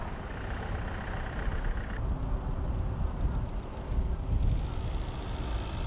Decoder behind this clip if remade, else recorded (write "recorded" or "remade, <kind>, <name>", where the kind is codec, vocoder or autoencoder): recorded